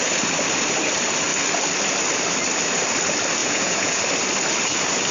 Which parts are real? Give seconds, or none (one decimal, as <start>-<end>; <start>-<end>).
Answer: 0.0-3.4; 4.0-5.1